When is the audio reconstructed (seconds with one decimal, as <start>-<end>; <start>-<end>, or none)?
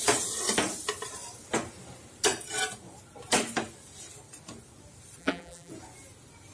5.2-5.7